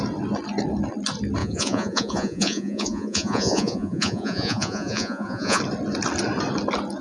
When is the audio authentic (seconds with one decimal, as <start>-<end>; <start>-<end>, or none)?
0.0-1.4; 5.6-7.0